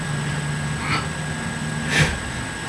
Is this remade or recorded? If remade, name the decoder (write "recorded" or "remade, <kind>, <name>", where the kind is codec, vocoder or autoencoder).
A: recorded